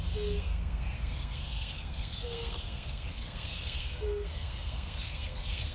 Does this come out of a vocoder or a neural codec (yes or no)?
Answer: yes